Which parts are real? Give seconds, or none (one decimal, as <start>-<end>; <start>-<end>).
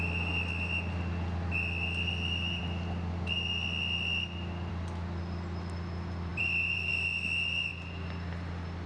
0.0-6.3; 6.9-8.9